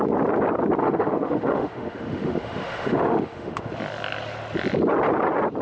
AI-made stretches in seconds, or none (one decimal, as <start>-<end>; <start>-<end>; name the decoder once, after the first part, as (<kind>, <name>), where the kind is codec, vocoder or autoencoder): 0.8-3.7 (autoencoder, DAC-VAE)